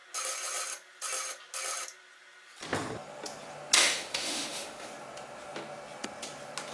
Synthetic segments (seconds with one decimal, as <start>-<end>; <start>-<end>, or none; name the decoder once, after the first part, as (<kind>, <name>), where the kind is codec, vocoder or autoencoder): 3.8-4.9 (autoencoder, DAC-VAE)